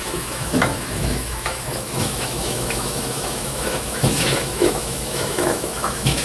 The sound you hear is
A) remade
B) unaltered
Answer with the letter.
A